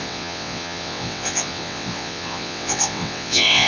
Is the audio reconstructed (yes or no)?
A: yes